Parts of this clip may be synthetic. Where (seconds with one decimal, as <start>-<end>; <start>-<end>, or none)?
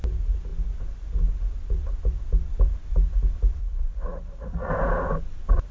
3.6-4.7